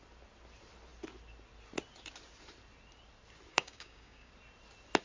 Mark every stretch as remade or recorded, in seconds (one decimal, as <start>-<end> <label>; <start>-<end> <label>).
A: 0.0-3.5 recorded; 3.5-4.3 remade; 4.3-5.0 recorded